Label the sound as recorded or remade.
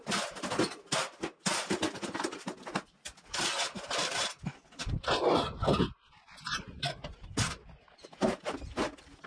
recorded